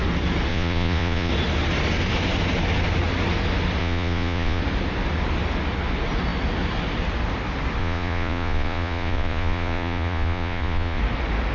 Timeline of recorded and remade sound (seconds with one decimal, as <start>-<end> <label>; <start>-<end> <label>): 0.0-0.5 recorded; 0.5-1.3 remade; 1.3-3.8 recorded; 3.8-4.6 remade; 4.6-7.8 recorded; 7.8-11.0 remade; 11.0-11.5 recorded